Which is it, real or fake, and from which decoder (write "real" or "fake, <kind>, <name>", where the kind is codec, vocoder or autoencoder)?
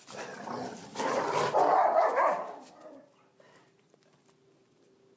real